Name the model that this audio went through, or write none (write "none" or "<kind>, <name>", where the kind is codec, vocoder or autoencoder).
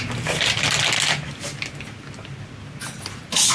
none